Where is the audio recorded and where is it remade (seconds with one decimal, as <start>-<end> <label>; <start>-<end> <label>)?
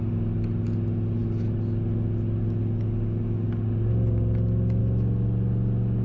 0.0-6.0 recorded